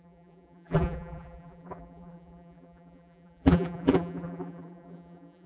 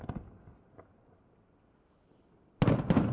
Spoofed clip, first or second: first